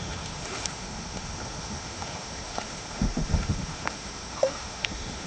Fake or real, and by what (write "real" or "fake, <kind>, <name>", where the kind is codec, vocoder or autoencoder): fake, autoencoder, DAC-VAE